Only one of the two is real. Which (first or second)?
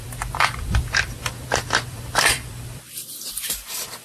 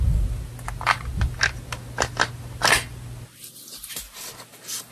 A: second